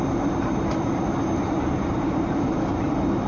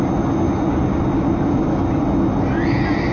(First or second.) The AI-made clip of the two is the first